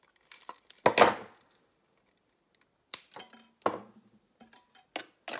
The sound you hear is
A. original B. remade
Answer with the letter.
A